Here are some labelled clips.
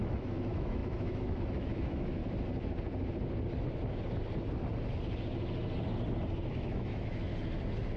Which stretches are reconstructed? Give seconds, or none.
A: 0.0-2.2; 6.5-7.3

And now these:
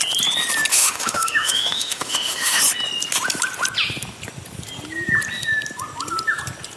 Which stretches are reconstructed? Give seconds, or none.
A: 0.7-2.6

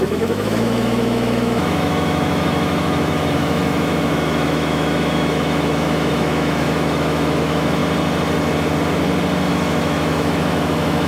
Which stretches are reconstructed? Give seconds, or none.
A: 0.0-7.8; 9.5-11.1